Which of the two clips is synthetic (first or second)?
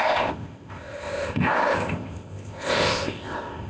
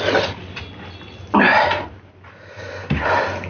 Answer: first